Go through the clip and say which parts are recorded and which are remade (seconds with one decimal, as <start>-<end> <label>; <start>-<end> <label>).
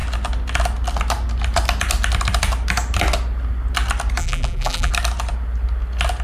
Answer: 0.0-4.2 recorded; 4.2-4.9 remade; 4.9-6.2 recorded